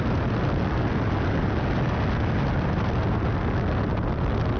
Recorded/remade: recorded